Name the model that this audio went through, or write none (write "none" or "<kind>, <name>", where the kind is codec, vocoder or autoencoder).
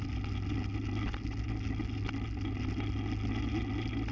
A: none